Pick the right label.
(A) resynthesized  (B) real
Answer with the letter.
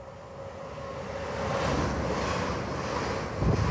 B